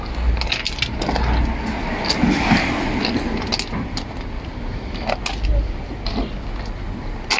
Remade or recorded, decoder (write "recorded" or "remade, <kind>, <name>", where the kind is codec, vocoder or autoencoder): recorded